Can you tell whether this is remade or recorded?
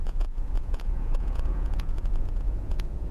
remade